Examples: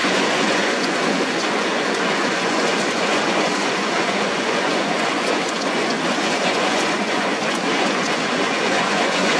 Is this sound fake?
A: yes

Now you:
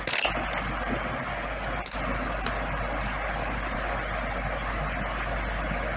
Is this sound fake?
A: no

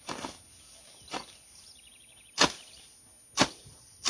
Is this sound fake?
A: no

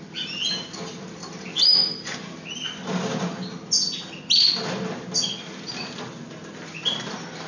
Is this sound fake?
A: no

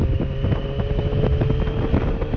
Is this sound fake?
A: no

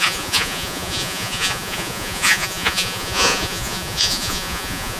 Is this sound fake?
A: yes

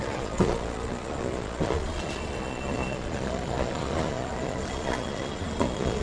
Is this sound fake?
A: yes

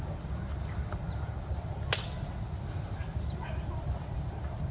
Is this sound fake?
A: no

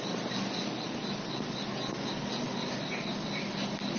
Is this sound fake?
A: no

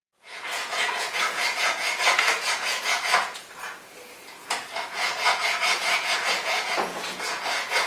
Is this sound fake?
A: yes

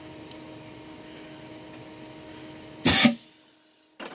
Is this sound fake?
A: no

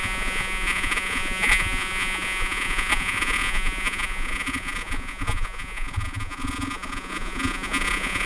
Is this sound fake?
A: yes